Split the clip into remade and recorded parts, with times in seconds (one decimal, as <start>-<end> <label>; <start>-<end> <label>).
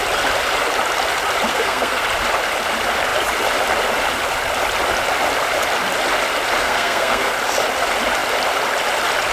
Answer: 0.0-1.5 recorded; 1.5-2.0 remade; 2.0-6.6 recorded; 6.6-7.3 remade; 7.3-9.3 recorded